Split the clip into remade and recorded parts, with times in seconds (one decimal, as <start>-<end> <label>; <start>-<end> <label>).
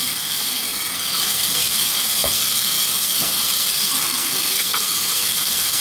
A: 0.0-5.8 remade